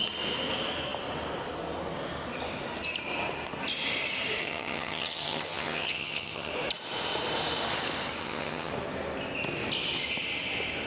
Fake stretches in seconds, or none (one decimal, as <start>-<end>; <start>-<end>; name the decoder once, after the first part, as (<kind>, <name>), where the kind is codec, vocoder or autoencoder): 4.4-6.5 (vocoder, HiFi-GAN); 8.2-8.7